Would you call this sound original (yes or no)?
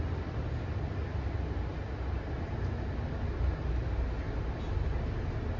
yes